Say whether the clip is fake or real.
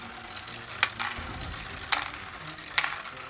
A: real